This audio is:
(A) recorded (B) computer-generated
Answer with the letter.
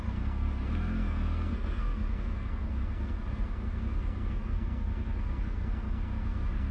B